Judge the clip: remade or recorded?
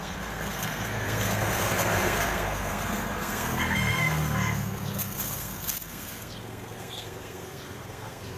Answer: remade